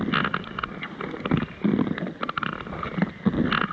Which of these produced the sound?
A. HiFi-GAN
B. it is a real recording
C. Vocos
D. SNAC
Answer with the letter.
B